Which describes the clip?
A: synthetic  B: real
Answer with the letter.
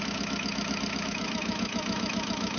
A